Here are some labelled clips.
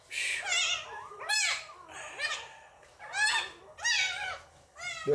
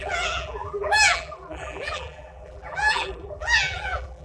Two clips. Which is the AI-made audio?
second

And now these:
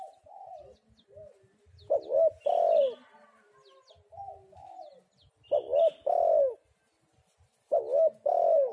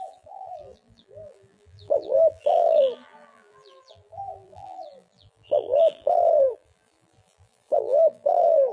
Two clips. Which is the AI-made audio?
second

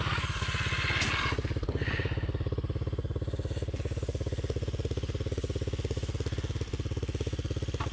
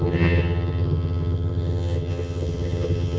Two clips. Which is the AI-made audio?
second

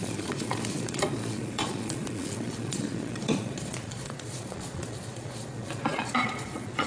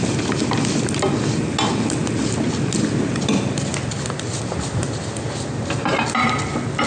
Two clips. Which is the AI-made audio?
first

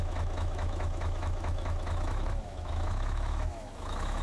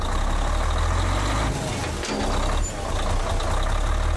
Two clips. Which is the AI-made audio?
first